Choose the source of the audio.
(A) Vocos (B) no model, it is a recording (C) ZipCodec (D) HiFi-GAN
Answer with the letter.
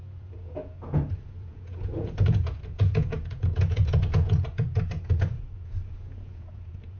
A